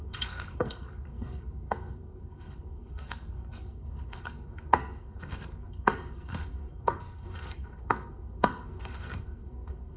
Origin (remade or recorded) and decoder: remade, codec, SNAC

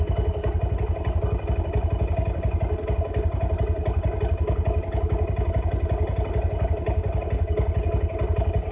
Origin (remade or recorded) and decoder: recorded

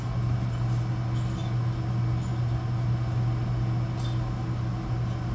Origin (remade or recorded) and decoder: recorded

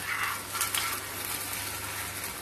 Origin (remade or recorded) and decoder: recorded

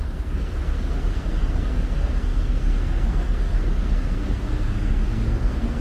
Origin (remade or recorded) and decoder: remade, codec, SNAC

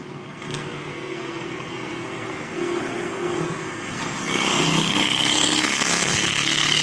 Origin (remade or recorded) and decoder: remade, codec, SNAC